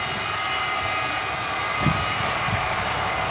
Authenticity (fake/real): real